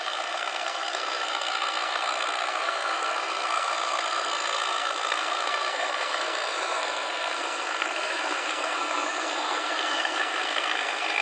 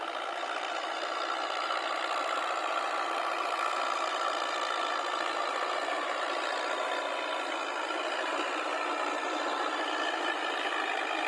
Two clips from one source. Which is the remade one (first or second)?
first